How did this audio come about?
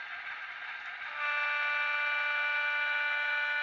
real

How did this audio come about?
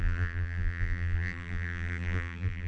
fake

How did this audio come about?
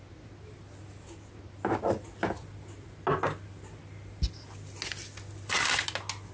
real